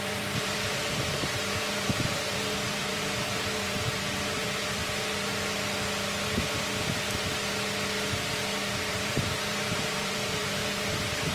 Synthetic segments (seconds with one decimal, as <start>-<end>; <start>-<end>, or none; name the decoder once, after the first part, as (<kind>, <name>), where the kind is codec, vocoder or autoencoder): 0.0-4.8 (vocoder, BigVGAN v2); 8.9-10.6